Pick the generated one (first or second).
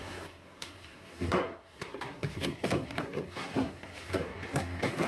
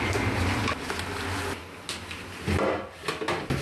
first